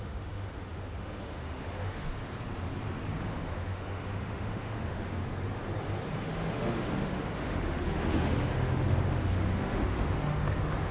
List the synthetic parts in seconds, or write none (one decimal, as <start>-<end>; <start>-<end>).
0.0-2.1; 3.2-5.1; 6.1-10.9